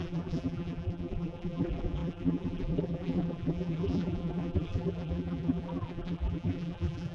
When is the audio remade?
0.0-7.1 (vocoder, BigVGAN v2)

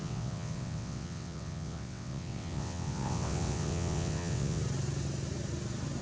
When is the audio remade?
0.0-4.6 (vocoder, WaveNeXt)